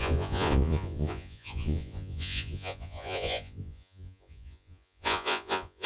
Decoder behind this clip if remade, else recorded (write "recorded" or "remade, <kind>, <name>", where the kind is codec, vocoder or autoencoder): remade, vocoder, Vocos